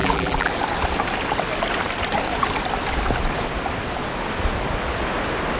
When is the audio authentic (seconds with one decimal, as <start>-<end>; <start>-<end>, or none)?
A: 0.5-5.6